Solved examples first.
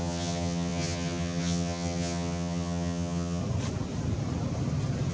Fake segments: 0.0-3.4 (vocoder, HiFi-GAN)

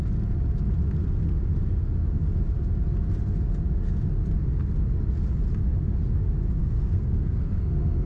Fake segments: 6.6-8.1 (codec, SNAC)

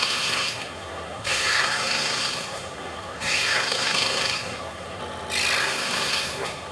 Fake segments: 0.0-5.0 (codec, SNAC); 5.6-6.7

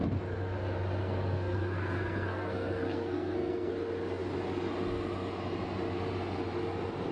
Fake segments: 1.0-3.7 (codec, SNAC)

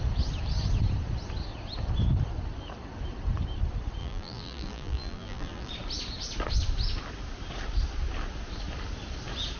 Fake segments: 4.0-5.7 (vocoder, BigVGAN v2)